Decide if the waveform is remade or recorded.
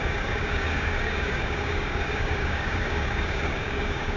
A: remade